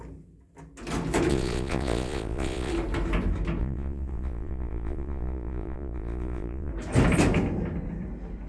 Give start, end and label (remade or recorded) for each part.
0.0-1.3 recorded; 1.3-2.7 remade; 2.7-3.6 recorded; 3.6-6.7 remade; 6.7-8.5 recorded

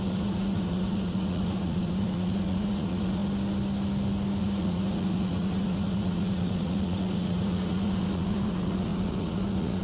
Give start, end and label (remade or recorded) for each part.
0.0-3.2 remade; 3.2-4.4 recorded; 4.4-9.8 remade

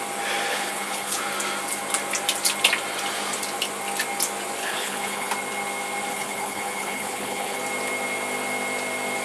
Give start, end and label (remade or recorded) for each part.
0.0-0.5 recorded; 0.5-1.2 remade; 1.2-4.6 recorded; 4.6-5.3 remade; 5.3-6.1 recorded; 6.1-7.6 remade; 7.6-9.2 recorded

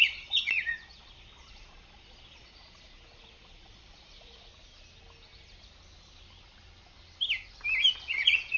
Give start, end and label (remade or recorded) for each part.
0.0-4.5 remade; 4.5-7.9 recorded; 7.9-8.6 remade

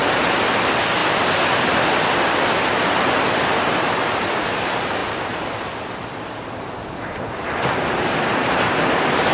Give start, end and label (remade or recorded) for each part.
0.0-9.3 recorded

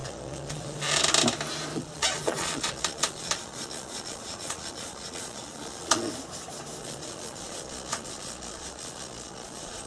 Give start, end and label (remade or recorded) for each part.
0.0-0.8 remade; 0.8-1.7 recorded; 1.7-6.1 remade; 6.1-6.8 recorded; 6.8-9.9 remade

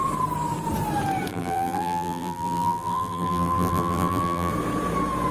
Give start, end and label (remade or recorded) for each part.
0.0-1.3 recorded; 1.3-4.5 remade; 4.5-5.3 recorded